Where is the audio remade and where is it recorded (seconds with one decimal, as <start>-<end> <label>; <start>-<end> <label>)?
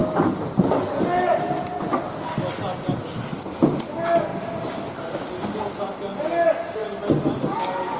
0.0-8.0 recorded